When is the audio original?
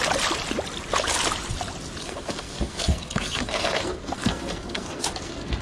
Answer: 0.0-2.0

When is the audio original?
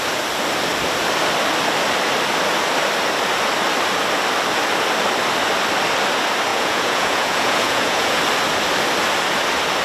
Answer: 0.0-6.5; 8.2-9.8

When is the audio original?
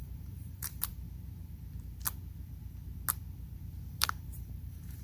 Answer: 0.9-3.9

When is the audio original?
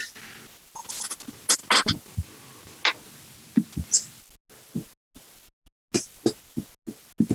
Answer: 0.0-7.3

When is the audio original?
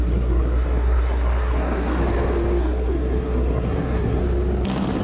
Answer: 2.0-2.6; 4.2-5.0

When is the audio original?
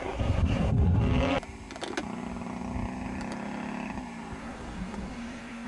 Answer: 1.0-4.4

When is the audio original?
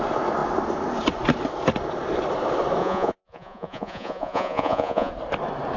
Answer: 0.0-2.8; 5.1-5.8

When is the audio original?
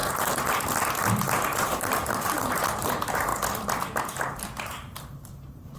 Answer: 0.0-1.1; 3.3-4.0